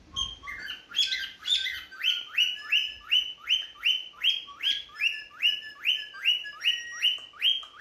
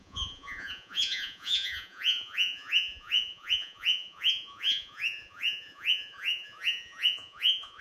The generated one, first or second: second